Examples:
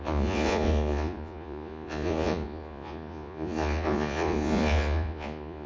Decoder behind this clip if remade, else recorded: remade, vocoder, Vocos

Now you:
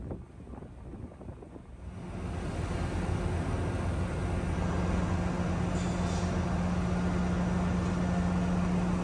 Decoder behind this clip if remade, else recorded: recorded